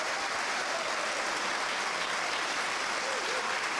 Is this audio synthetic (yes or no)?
yes